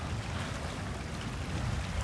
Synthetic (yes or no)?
no